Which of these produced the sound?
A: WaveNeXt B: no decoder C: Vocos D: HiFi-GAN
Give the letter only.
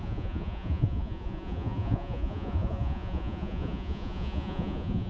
C